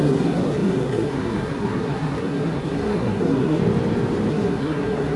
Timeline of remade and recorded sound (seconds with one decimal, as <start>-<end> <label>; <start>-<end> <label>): 0.0-3.6 remade; 3.6-4.3 recorded; 4.3-5.2 remade